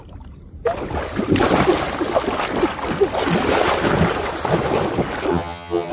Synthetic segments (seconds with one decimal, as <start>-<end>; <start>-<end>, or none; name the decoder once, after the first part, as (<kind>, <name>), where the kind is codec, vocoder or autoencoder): 5.3-5.9 (vocoder, HiFi-GAN)